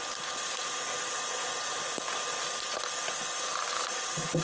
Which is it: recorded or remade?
recorded